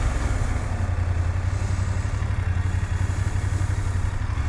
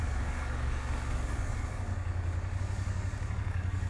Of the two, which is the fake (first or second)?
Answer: second